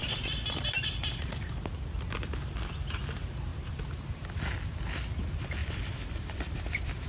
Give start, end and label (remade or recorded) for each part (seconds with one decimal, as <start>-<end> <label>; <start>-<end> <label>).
0.0-1.2 remade; 1.2-5.6 recorded; 5.6-6.5 remade; 6.5-7.1 recorded